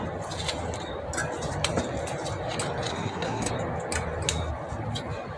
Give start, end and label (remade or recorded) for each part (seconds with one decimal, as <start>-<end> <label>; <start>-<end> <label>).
0.0-2.9 recorded; 2.9-3.5 remade; 3.5-5.4 recorded